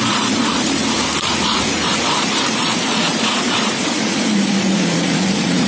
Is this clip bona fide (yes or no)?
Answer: no